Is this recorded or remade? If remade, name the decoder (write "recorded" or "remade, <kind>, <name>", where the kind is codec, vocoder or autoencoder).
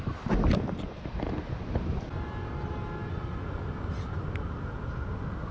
recorded